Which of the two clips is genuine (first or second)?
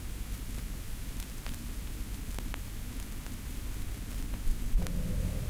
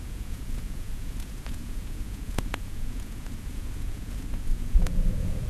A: first